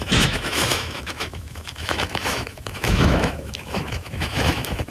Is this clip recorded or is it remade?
remade